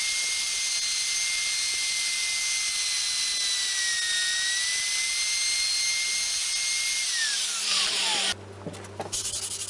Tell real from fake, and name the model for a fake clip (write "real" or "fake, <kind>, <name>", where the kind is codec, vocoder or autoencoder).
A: real